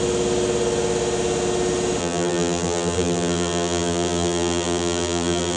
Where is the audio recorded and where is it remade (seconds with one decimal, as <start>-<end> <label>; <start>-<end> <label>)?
0.0-2.0 recorded; 2.0-5.6 remade